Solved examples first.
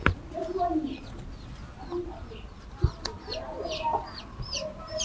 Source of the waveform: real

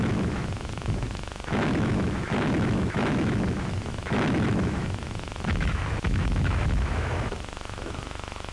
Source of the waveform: fake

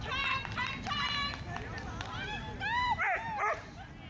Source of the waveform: real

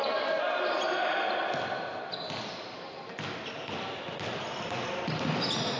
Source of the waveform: real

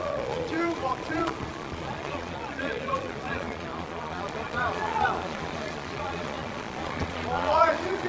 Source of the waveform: fake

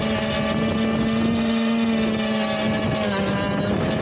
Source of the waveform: real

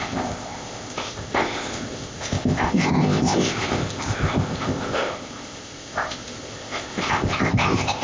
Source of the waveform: fake